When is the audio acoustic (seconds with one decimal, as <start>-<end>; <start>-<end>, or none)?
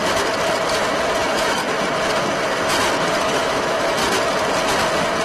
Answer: 0.0-1.2; 1.6-3.2; 4.0-5.2